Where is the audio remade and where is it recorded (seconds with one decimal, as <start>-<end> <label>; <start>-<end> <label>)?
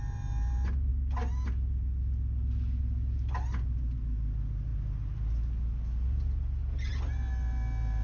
0.0-8.0 recorded